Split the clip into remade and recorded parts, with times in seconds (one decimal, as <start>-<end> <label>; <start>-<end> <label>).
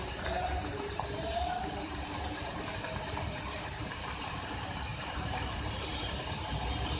0.0-0.7 recorded; 0.7-4.2 remade; 4.2-4.9 recorded; 4.9-6.6 remade; 6.6-7.0 recorded